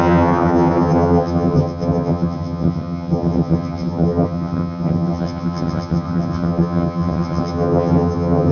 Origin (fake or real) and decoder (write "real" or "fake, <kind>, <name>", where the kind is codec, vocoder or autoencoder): fake, vocoder, HiFi-GAN